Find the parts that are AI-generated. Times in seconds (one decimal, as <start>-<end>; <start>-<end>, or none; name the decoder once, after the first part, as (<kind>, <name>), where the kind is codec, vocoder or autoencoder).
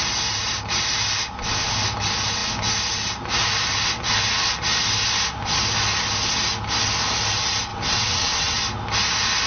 7.7-8.6 (vocoder, WaveNeXt)